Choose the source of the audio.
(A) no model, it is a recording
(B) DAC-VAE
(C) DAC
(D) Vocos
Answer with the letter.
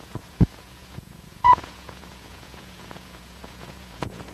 D